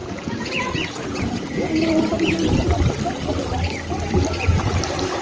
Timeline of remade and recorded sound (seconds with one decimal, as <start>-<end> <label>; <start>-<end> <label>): 0.0-1.5 remade; 1.5-5.2 recorded